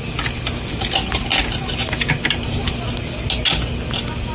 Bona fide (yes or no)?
yes